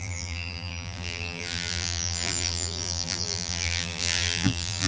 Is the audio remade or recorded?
remade